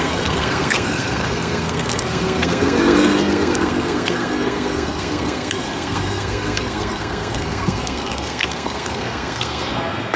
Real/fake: fake